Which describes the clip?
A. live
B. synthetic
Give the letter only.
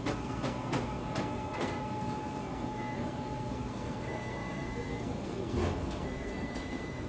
B